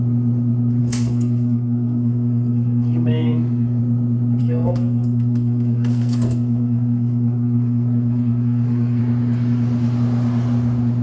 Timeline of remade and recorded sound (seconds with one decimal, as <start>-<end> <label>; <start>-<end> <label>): 0.0-0.8 recorded; 0.8-3.8 remade; 3.8-4.4 recorded; 4.4-9.0 remade; 9.0-11.0 recorded